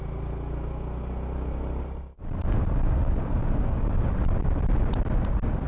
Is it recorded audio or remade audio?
recorded